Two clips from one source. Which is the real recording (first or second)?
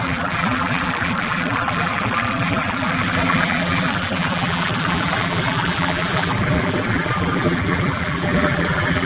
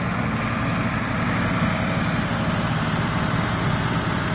second